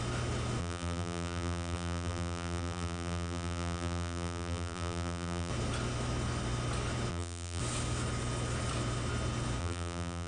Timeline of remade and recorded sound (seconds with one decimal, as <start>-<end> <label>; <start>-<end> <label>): 0.0-0.6 recorded; 0.6-5.5 remade; 5.5-7.1 recorded; 7.1-7.6 remade; 7.6-9.6 recorded; 9.6-10.3 remade